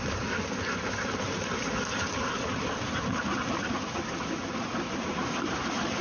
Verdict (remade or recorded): recorded